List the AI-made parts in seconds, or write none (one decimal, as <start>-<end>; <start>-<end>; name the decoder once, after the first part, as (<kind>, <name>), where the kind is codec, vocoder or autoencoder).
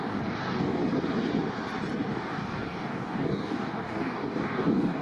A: 0.0-0.8 (codec, DAC); 2.1-5.0